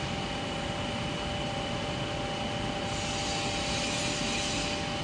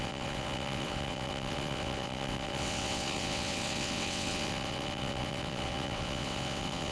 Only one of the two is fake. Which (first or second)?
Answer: second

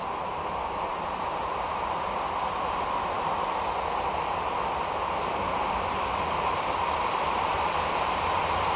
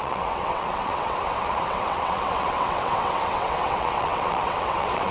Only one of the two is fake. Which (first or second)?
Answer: second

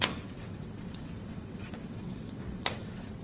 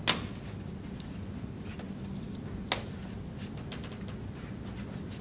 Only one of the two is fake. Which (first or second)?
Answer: first